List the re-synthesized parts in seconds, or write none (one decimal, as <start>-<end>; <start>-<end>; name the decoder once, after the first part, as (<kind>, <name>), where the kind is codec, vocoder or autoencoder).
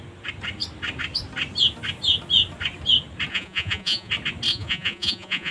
3.3-4.1 (vocoder, Vocos); 4.5-5.5